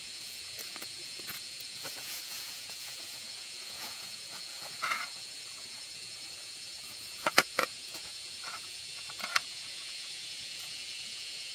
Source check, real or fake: fake